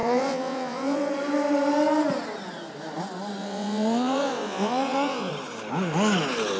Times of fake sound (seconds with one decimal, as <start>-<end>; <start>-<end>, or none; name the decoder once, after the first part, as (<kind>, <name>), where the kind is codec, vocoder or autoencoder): 0.0-1.1 (vocoder, WaveNeXt); 3.4-5.3